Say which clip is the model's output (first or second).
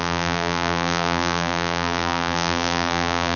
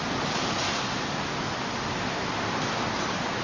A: first